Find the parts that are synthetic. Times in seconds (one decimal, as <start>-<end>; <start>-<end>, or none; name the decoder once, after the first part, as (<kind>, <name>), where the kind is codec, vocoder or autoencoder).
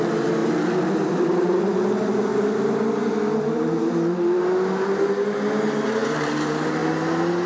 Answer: 0.4-1.6 (vocoder, BigVGAN v2); 2.3-4.4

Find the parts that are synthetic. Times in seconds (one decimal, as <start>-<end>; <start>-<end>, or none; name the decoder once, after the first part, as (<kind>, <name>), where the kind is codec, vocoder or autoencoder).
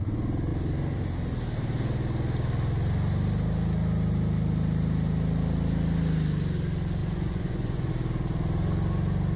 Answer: 7.0-7.9 (vocoder, Vocos)